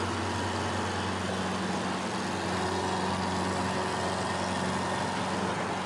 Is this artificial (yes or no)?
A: no